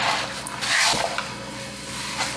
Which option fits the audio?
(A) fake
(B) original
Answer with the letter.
B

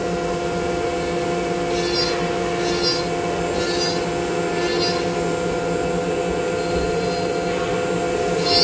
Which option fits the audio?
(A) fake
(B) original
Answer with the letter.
B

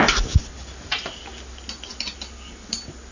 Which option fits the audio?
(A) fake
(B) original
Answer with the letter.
B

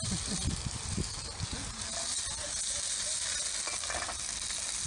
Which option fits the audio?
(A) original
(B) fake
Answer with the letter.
A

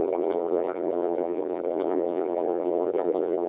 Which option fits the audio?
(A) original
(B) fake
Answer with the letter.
B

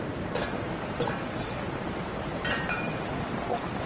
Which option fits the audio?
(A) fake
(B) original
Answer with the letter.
A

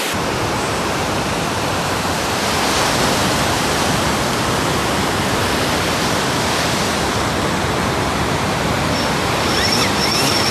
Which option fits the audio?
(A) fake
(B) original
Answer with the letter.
A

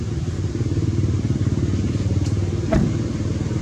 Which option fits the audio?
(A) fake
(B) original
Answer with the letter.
A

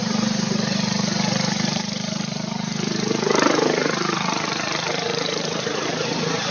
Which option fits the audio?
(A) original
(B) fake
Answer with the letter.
B